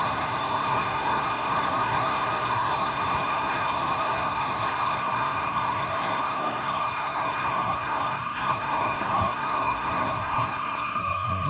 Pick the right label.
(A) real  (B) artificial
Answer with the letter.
B